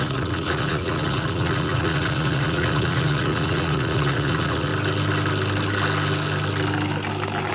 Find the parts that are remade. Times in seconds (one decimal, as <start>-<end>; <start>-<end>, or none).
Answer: 0.0-4.7